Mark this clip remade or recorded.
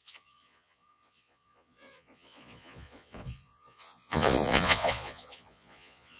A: remade